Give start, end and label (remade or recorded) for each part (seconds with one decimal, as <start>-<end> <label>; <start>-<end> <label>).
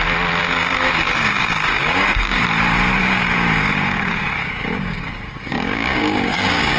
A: 0.0-0.4 recorded; 0.4-2.4 remade; 2.4-3.0 recorded; 3.0-6.8 remade